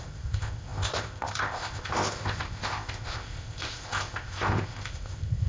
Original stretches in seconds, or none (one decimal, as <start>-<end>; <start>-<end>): none